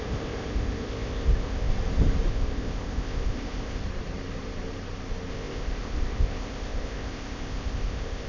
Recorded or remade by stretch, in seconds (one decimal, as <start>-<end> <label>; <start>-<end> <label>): 0.0-1.7 remade; 1.7-2.3 recorded; 2.3-3.8 remade; 3.8-5.3 recorded; 5.3-8.3 remade